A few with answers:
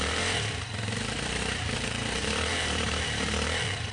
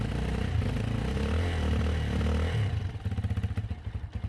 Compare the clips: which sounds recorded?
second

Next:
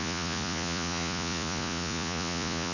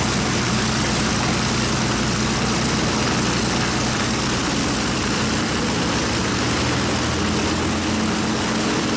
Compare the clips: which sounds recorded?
second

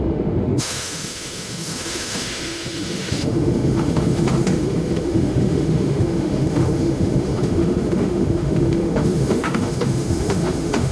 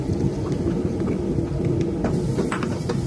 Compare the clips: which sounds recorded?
second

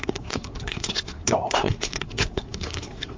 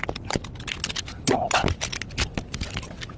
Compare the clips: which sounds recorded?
second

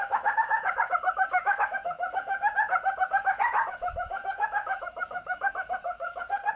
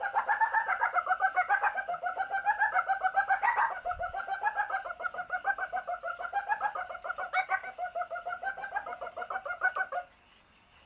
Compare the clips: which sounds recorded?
second